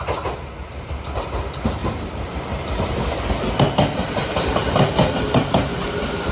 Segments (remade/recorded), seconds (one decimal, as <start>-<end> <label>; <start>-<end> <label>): 0.0-1.8 recorded; 1.8-3.0 remade; 3.0-5.7 recorded; 5.7-6.3 remade